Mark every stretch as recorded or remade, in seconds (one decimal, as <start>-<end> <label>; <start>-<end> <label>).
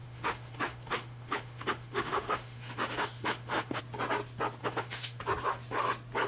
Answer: 0.0-3.8 remade; 3.8-4.6 recorded; 4.6-5.2 remade; 5.2-6.3 recorded